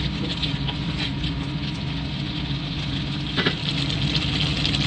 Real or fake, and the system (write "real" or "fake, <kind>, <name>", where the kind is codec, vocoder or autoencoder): real